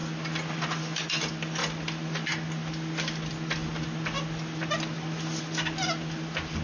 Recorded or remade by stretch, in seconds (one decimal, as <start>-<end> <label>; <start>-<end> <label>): 0.0-6.6 recorded